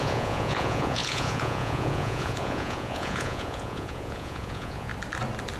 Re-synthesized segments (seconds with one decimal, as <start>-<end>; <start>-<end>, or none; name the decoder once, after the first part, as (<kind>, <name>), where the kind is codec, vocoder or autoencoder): 0.0-4.9 (vocoder, Vocos)